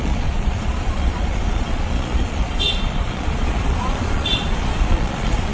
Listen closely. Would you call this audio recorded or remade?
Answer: remade